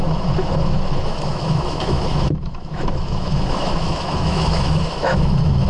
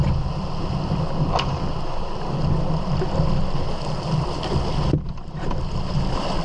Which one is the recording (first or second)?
second